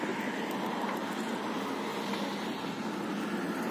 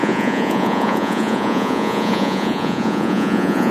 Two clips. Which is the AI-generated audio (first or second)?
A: second